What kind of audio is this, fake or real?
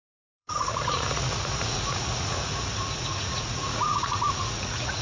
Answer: fake